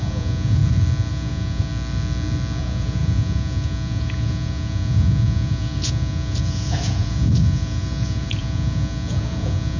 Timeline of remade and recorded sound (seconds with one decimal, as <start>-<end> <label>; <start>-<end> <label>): 0.0-0.6 remade; 0.6-1.1 recorded; 1.1-1.7 remade; 1.7-2.6 recorded; 2.6-9.8 remade